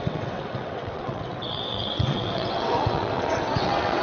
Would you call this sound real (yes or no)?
no